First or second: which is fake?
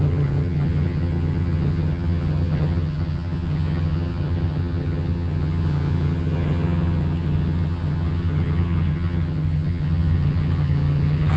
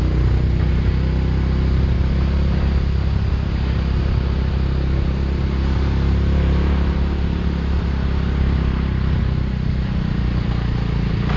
first